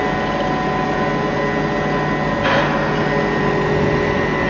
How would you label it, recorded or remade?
recorded